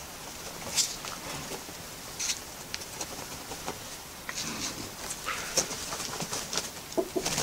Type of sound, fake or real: real